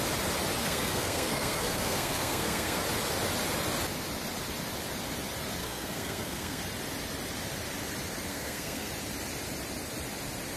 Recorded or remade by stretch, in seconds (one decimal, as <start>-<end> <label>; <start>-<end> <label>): 0.0-0.6 recorded; 0.6-2.8 remade; 2.8-5.6 recorded; 5.6-6.6 remade; 6.6-8.3 recorded; 8.3-8.9 remade; 8.9-10.6 recorded